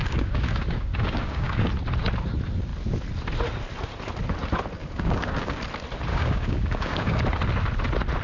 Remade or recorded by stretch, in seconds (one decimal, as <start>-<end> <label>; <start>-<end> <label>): 0.0-1.7 remade; 1.7-4.8 recorded; 4.8-5.6 remade; 5.6-6.1 recorded; 6.1-7.2 remade; 7.2-8.2 recorded